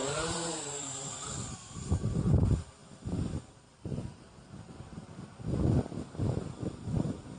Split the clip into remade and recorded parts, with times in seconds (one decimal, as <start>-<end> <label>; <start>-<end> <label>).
0.0-7.4 remade